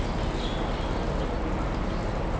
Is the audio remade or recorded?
recorded